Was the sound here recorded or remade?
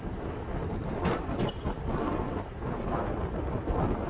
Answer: recorded